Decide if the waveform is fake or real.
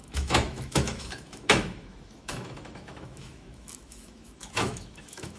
fake